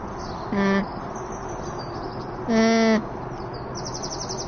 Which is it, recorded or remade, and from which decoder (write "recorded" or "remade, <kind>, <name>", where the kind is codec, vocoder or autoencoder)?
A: recorded